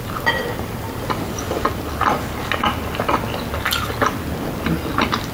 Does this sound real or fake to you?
real